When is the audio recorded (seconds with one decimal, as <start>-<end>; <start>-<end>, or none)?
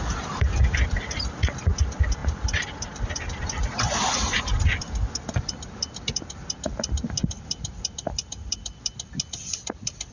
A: 0.0-10.1